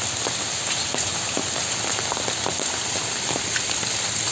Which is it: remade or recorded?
recorded